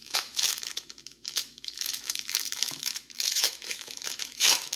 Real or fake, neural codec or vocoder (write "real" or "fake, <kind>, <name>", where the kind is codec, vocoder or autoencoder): fake, autoencoder, DAC-VAE